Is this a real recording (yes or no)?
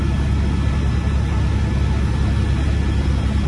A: yes